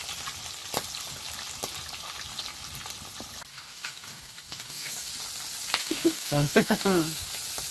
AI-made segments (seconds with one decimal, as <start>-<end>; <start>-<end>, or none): 3.5-5.1; 5.8-7.3